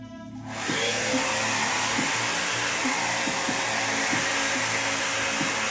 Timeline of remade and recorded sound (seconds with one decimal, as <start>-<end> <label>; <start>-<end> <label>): 0.0-5.7 recorded